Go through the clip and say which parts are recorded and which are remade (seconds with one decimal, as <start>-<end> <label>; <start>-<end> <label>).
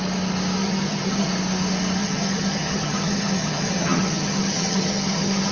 0.0-0.6 recorded; 0.6-1.3 remade; 1.3-2.0 recorded; 2.0-5.5 remade